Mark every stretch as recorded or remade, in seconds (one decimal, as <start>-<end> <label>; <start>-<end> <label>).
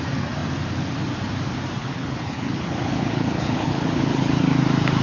0.0-1.8 recorded; 1.8-4.4 remade; 4.4-5.0 recorded